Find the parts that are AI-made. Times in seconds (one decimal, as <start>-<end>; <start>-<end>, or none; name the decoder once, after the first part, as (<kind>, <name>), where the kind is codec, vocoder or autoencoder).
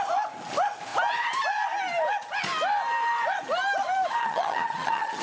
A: 4.2-5.2 (vocoder, HiFi-GAN)